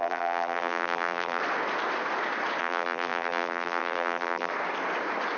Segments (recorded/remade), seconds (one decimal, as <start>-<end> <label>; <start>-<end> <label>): 0.0-1.4 remade; 1.4-2.6 recorded; 2.6-4.5 remade; 4.5-5.4 recorded